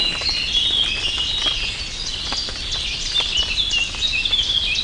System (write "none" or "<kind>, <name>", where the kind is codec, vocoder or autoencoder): none